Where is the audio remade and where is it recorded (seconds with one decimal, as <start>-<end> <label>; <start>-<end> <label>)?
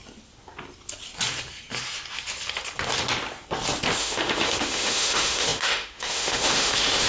0.0-4.0 recorded; 4.0-7.1 remade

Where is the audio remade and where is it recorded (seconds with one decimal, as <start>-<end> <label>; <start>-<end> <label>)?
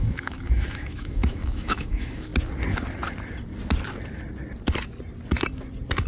0.0-2.3 remade; 2.3-6.1 recorded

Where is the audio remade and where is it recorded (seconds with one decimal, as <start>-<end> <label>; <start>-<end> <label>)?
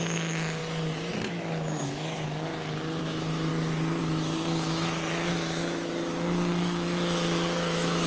0.0-0.6 remade; 0.6-1.3 recorded; 1.3-2.5 remade; 2.5-3.0 recorded; 3.0-3.5 remade; 3.5-4.0 recorded; 4.0-8.1 remade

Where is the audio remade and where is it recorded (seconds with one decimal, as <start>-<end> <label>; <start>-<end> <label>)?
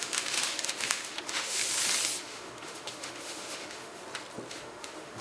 0.0-1.6 remade; 1.6-2.2 recorded; 2.2-4.0 remade; 4.0-4.5 recorded; 4.5-5.2 remade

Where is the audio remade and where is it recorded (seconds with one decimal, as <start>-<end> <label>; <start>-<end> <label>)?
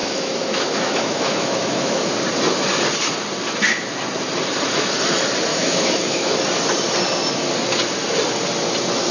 0.0-2.1 remade; 2.1-5.5 recorded; 5.5-6.3 remade; 6.3-9.1 recorded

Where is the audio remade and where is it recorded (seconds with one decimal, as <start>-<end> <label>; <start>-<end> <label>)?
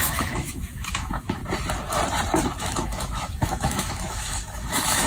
0.0-1.4 remade; 1.4-2.6 recorded; 2.6-5.1 remade